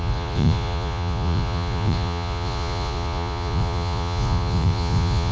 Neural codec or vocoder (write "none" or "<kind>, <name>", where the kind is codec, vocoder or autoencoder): vocoder, Vocos